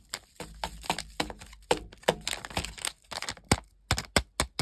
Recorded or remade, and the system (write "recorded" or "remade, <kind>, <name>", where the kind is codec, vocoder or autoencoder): recorded